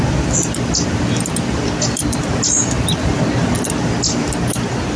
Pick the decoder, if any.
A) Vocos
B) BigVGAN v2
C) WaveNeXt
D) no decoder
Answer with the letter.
D